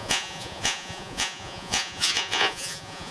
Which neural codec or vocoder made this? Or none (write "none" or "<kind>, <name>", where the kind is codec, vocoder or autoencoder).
vocoder, Vocos